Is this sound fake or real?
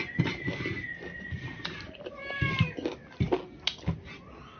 real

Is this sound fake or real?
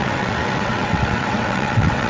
fake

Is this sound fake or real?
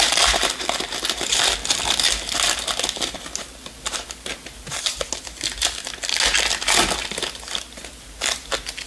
real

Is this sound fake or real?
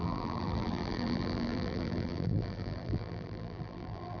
fake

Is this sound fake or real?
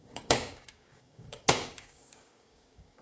fake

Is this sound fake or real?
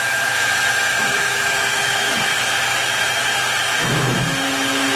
fake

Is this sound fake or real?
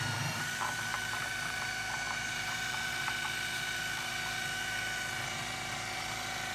fake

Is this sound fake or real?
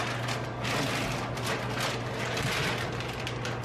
real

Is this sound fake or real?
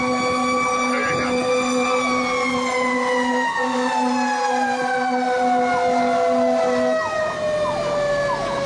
real